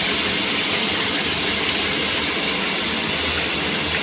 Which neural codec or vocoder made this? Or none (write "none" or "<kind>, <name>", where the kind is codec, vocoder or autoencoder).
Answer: none